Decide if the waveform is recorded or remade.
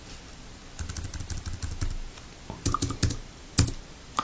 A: recorded